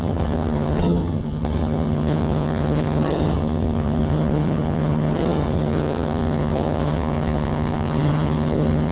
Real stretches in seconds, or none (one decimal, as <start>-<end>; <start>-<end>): none